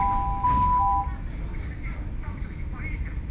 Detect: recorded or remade recorded